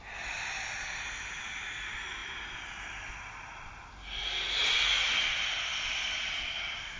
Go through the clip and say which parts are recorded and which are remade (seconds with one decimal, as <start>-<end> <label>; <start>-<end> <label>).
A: 0.0-2.2 recorded; 2.2-3.9 remade; 3.9-5.7 recorded; 5.7-7.0 remade